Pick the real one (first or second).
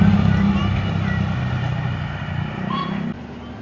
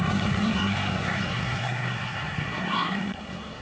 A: first